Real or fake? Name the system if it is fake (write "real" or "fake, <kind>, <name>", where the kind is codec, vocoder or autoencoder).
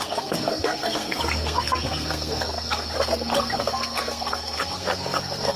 fake, codec, SNAC